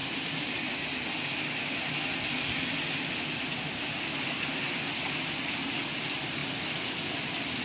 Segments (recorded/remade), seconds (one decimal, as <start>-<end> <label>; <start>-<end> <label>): 0.0-7.6 recorded